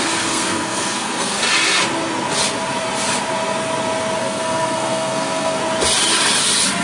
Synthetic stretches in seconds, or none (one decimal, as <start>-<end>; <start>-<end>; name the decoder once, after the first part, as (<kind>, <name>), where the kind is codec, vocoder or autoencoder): 0.0-1.4 (codec, SNAC); 4.2-5.6